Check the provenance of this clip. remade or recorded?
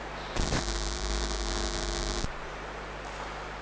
remade